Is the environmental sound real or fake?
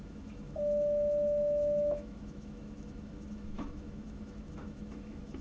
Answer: fake